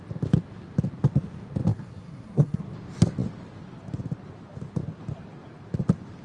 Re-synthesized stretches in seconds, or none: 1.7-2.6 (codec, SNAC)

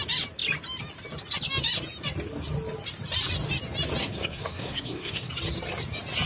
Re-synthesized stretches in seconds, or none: 4.0-5.3 (codec, SNAC)

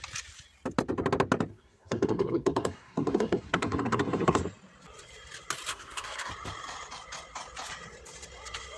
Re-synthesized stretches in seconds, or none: 1.5-4.4 (codec, SNAC); 5.7-6.3